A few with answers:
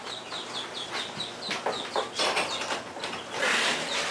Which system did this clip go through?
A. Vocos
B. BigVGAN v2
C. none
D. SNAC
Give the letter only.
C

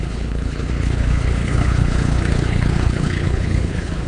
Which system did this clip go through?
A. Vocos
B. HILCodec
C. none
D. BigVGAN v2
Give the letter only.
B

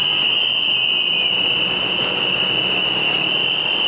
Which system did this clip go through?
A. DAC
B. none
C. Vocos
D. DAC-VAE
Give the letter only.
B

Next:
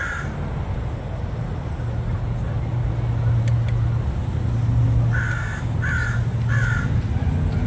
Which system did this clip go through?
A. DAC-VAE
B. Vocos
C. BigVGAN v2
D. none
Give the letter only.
D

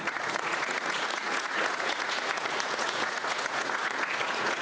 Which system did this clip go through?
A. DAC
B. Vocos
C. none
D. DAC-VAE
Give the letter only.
B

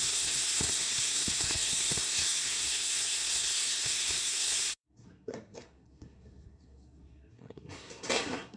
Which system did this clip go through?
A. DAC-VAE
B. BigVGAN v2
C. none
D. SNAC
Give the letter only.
D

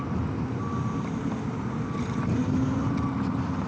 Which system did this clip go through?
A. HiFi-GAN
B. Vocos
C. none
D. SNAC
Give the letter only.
C